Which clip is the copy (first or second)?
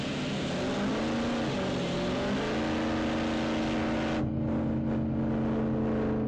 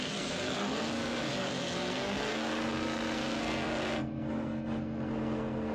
second